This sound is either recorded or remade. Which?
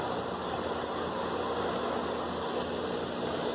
recorded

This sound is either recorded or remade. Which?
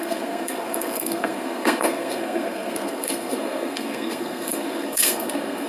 remade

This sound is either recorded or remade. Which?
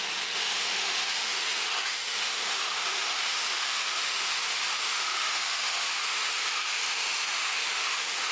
remade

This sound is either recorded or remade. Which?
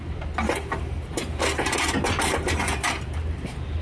remade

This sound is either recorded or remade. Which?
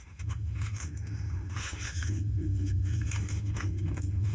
remade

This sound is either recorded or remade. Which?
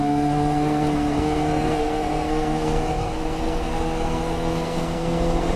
remade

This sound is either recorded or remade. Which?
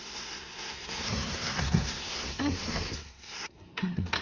remade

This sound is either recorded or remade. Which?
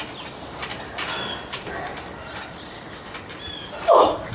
recorded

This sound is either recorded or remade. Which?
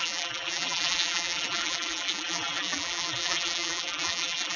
remade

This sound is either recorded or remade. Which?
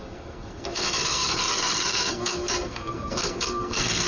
remade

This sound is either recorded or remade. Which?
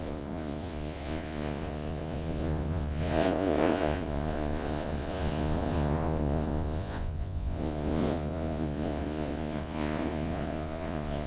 remade